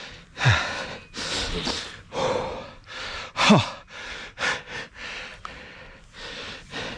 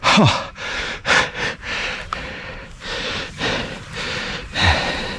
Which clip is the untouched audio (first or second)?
first